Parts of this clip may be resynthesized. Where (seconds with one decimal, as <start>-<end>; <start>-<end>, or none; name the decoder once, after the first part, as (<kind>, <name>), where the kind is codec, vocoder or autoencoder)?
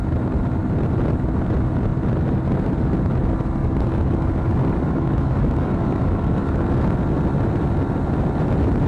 3.6-6.6 (codec, DAC)